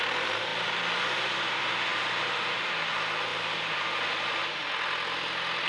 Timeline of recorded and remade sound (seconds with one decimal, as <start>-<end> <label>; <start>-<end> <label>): 0.0-4.6 remade; 4.6-5.7 recorded